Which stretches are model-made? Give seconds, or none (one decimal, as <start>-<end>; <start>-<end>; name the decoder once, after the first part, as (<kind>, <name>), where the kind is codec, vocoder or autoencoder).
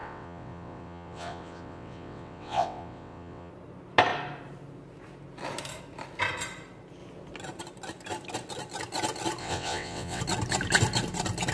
0.0-3.5 (vocoder, WaveNeXt); 9.4-10.2